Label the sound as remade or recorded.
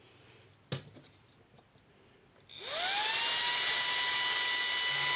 recorded